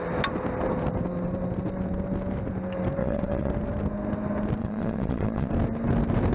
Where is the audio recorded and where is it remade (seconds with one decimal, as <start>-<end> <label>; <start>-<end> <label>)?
0.0-3.0 recorded; 3.0-3.5 remade; 3.5-4.6 recorded; 4.6-5.5 remade; 5.5-6.3 recorded